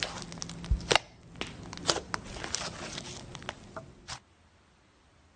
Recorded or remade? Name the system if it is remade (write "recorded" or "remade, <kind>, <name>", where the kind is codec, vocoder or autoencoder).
recorded